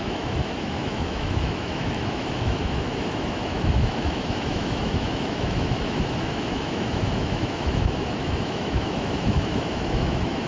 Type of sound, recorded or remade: remade